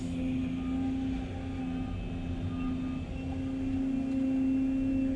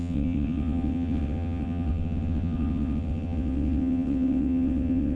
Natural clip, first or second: first